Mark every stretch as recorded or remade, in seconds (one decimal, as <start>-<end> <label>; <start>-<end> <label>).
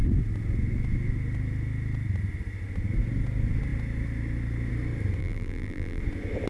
0.0-5.2 recorded; 5.2-6.0 remade; 6.0-6.5 recorded